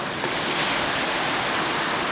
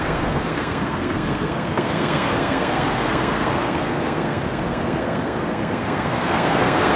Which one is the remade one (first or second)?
second